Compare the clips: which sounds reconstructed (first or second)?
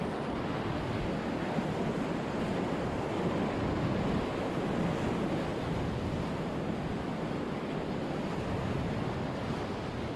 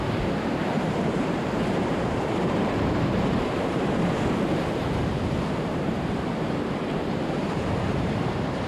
second